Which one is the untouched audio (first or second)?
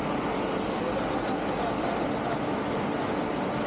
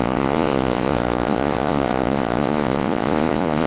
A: first